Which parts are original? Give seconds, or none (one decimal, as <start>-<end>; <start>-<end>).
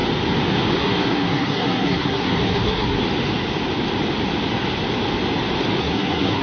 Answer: 0.0-0.8; 3.0-5.8